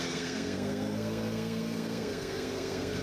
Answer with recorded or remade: remade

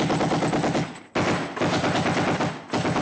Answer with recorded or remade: recorded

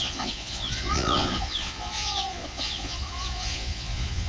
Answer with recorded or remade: remade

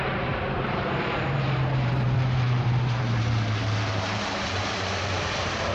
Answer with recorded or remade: remade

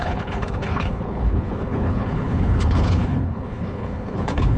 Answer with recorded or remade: remade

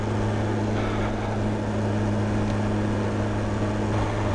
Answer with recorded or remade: recorded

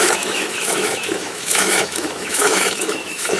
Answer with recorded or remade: remade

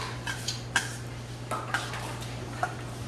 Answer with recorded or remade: recorded